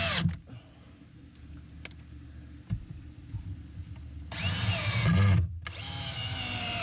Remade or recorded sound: recorded